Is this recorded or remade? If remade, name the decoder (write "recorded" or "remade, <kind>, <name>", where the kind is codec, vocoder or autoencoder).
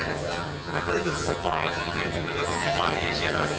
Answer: remade, vocoder, HiFi-GAN